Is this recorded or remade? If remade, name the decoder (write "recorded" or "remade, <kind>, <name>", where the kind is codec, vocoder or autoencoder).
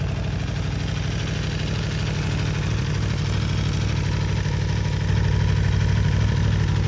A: recorded